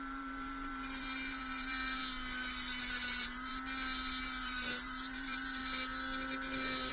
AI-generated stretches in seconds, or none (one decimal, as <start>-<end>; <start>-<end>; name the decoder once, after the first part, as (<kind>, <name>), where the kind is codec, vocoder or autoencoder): 0.0-2.0 (vocoder, BigVGAN v2); 2.8-3.5; 4.2-5.6